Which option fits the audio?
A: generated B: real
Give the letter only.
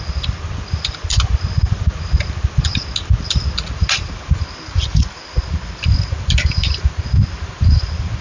B